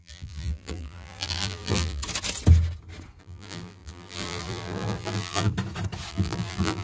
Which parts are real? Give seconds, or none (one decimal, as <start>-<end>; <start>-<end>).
2.0-3.2; 5.5-6.1